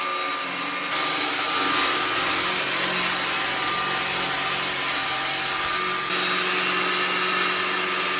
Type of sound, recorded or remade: recorded